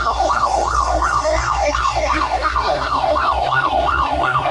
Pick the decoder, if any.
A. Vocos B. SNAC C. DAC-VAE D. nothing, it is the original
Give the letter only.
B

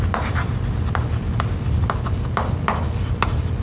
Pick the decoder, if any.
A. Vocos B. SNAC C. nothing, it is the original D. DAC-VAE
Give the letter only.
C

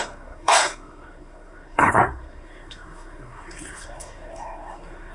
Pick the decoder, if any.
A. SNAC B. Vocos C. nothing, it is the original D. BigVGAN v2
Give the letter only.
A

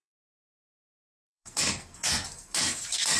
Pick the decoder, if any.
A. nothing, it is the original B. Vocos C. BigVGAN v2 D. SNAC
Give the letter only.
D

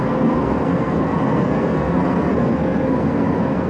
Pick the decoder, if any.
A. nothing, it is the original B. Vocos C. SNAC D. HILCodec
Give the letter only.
C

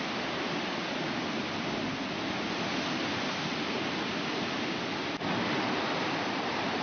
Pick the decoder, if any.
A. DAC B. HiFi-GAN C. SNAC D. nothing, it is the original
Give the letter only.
D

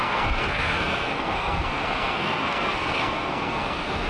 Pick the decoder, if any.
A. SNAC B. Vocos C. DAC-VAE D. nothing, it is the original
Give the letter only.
A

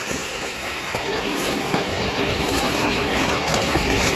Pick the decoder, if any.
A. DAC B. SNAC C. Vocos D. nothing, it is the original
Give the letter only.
B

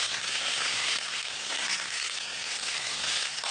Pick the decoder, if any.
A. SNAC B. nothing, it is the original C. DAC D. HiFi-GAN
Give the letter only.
A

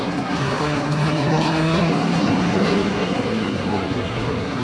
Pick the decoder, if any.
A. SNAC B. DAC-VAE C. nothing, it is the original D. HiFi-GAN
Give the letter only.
A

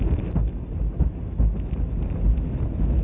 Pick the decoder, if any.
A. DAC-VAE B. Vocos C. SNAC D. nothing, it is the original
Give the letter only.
D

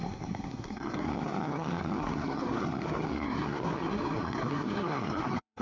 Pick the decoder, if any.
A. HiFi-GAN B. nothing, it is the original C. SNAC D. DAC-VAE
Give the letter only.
C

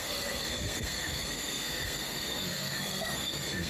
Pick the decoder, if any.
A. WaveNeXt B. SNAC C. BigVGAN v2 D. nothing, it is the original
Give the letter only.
B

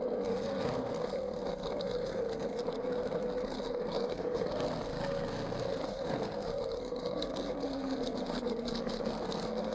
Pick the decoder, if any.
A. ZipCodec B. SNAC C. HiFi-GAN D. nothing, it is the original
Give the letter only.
B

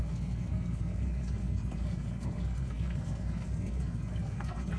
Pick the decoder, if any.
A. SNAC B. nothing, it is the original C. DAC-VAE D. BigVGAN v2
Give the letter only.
A